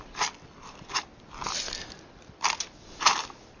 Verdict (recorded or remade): recorded